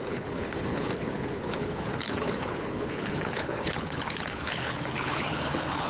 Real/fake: fake